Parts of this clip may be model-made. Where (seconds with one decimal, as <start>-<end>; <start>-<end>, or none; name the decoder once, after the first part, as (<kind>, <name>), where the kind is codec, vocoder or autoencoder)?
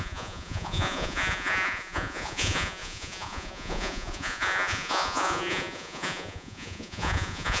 0.0-7.6 (vocoder, Vocos)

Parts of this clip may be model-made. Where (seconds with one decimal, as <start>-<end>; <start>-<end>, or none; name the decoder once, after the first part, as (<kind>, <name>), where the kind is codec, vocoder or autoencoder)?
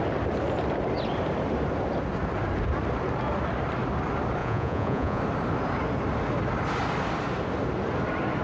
4.4-5.2 (vocoder, Vocos)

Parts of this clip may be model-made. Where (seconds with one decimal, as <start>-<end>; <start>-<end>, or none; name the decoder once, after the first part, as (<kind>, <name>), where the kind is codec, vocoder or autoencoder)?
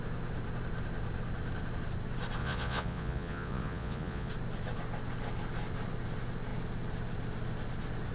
2.4-4.3 (vocoder, Vocos)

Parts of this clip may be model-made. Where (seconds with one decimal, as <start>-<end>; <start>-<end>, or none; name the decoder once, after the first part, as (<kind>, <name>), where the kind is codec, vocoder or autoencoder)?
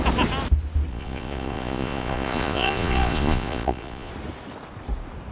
0.9-4.1 (vocoder, Vocos)